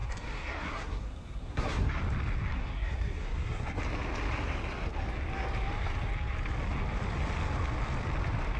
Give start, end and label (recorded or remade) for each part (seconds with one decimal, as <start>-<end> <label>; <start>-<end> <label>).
0.0-2.0 remade; 2.0-2.5 recorded; 2.5-3.8 remade; 3.8-8.6 recorded